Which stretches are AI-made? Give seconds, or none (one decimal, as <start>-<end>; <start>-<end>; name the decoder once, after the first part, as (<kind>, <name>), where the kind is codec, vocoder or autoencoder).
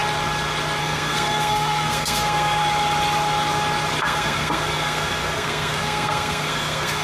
0.8-2.6 (codec, SNAC); 4.0-7.0